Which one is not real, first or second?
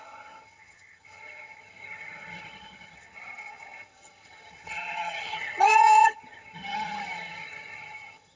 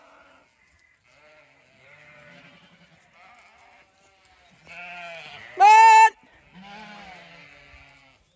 first